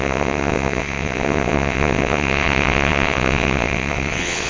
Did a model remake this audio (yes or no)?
yes